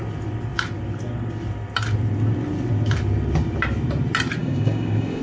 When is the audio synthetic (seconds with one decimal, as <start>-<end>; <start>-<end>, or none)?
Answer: 4.4-5.2